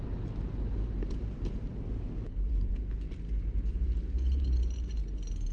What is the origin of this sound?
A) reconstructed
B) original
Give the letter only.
A